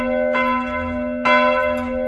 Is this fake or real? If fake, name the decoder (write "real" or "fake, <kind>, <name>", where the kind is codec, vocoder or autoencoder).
real